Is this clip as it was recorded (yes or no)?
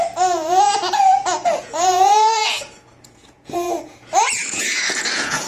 no